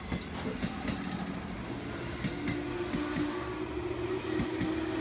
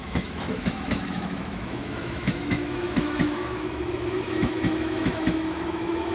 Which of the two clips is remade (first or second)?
second